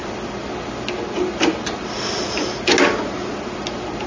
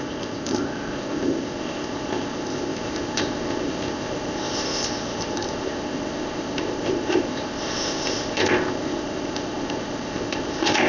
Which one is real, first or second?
first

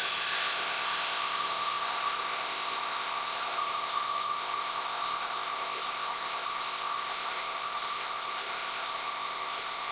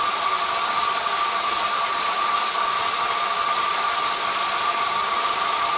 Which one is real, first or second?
second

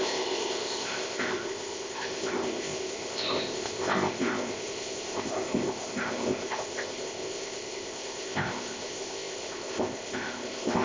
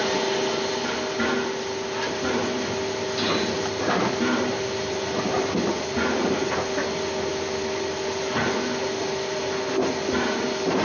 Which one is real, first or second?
second